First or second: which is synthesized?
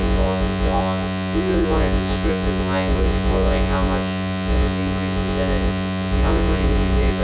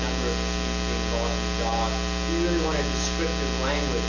first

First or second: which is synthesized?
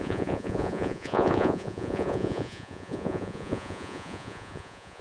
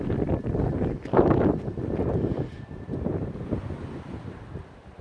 first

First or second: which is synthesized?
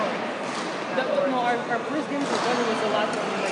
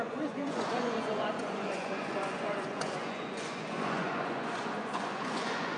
second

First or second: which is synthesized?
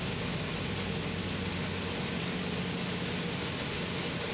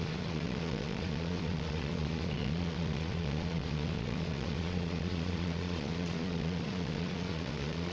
second